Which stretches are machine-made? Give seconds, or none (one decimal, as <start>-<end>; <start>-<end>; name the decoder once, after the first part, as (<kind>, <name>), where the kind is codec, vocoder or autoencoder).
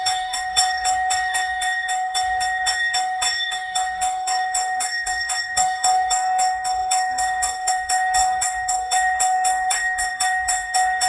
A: 0.0-11.1 (codec, DAC)